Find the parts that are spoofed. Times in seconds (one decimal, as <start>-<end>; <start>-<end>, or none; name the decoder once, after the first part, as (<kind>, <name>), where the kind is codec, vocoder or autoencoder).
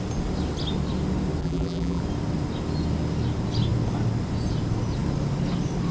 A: 1.4-2.0 (vocoder, BigVGAN v2)